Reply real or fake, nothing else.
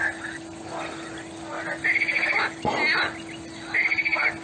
real